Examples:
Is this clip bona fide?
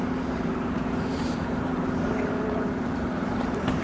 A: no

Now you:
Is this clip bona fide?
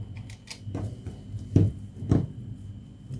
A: no